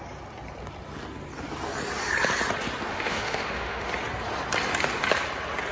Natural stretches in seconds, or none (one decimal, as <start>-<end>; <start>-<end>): 0.0-2.9; 3.9-5.7